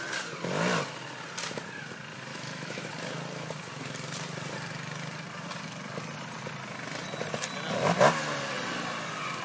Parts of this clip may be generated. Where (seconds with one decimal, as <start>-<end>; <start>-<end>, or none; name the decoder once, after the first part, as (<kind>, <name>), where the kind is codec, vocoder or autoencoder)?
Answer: 2.3-2.9 (autoencoder, DAC-VAE)